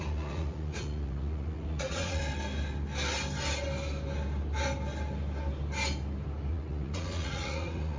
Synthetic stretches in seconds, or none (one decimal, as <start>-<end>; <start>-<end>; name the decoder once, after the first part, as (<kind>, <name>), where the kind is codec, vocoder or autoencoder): 0.0-2.2 (vocoder, Vocos); 6.5-8.0